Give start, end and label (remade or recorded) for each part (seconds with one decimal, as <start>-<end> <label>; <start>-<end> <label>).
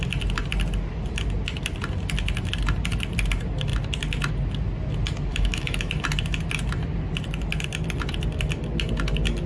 0.0-5.3 recorded; 5.3-5.9 remade; 5.9-9.5 recorded